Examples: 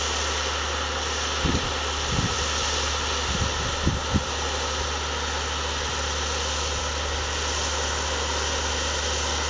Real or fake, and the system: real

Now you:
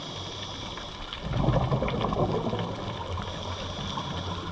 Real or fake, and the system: real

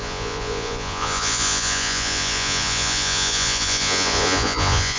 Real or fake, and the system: fake, vocoder, Vocos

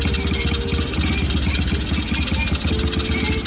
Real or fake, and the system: real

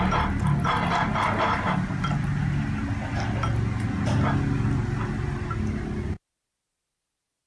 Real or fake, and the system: real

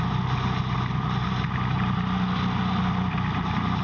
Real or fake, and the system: real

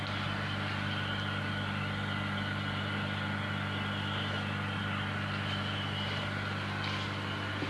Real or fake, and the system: real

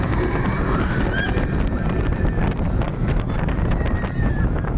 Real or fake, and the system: real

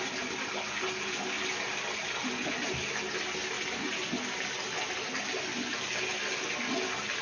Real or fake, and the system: real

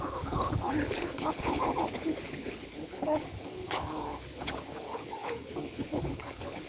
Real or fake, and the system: fake, codec, HILCodec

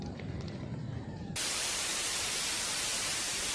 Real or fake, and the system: fake, vocoder, BigVGAN v2